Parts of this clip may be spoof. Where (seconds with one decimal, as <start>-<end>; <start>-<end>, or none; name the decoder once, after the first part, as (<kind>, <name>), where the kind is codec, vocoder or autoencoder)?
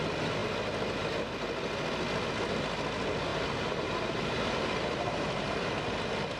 3.3-5.8 (vocoder, BigVGAN v2)